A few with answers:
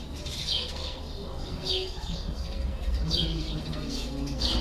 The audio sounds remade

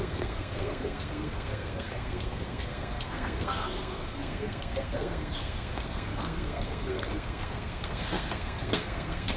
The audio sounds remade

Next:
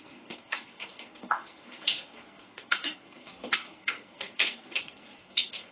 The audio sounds remade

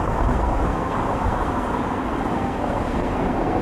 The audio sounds remade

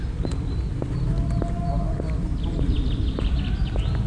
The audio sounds recorded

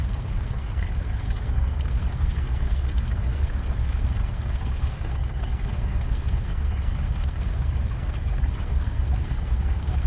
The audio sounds remade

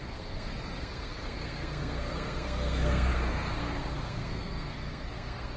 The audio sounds remade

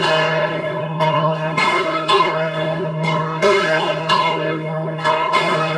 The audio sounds remade